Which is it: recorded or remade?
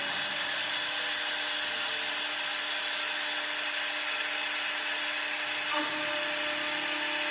recorded